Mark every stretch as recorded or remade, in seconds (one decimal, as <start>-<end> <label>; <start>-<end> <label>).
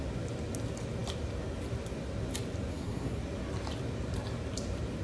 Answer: 0.0-2.7 recorded; 2.7-3.2 remade; 3.2-5.0 recorded